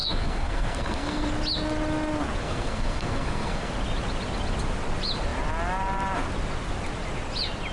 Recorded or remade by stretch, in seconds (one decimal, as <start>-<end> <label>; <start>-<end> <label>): 0.0-1.3 remade; 1.3-2.4 recorded; 2.4-3.7 remade; 3.7-7.7 recorded